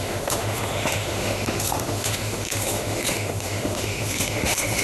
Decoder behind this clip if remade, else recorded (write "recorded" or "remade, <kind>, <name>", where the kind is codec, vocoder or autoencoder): remade, autoencoder, DAC-VAE